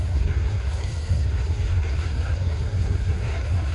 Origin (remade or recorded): remade